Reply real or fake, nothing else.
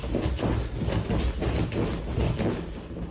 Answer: real